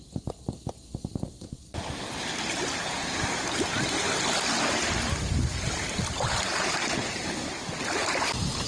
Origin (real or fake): real